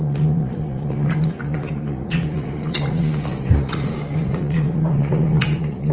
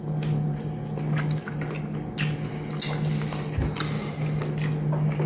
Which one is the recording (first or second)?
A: second